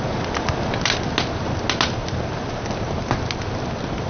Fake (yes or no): no